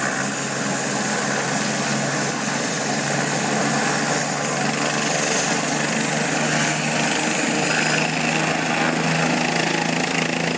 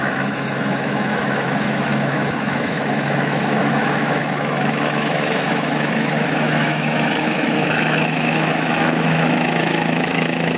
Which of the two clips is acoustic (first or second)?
first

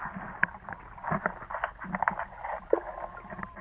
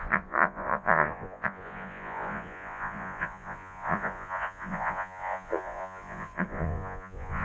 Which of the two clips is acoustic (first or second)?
first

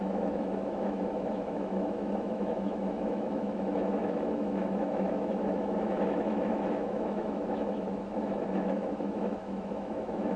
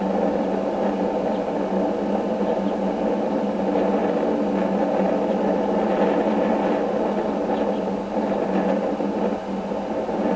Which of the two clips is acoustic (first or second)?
second